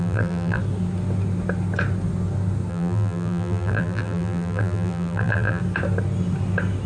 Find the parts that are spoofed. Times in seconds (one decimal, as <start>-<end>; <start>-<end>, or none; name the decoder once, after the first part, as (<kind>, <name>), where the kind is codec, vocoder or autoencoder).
0.0-0.6 (vocoder, BigVGAN v2); 2.7-5.6